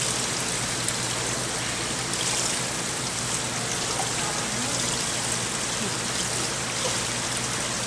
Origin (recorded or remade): recorded